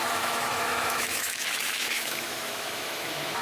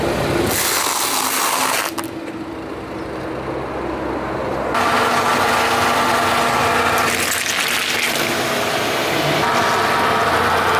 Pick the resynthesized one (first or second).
first